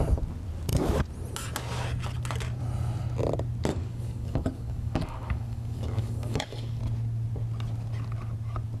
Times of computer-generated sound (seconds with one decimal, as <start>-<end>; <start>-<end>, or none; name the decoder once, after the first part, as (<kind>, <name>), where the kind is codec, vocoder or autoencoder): 3.7-6.8 (codec, DAC)